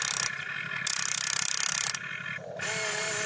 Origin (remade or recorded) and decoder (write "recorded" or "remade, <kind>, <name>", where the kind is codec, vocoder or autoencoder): recorded